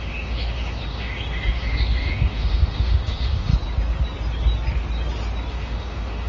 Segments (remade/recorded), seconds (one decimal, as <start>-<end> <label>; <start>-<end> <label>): 0.0-3.5 remade; 3.5-5.5 recorded; 5.5-6.3 remade